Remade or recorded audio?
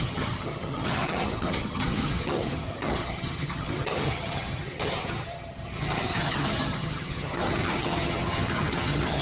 remade